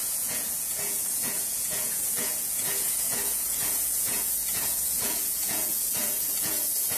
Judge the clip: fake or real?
fake